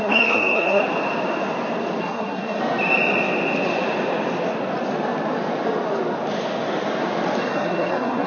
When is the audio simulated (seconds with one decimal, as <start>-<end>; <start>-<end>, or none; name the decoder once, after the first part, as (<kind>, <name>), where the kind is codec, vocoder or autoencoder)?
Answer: 0.0-0.8 (codec, SNAC); 2.0-2.6; 7.4-8.3